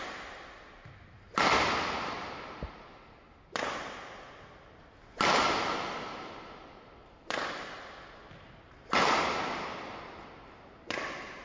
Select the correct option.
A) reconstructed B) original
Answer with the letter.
B